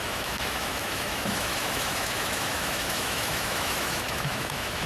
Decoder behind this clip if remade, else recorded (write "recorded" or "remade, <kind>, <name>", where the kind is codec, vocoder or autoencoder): remade, autoencoder, DAC-VAE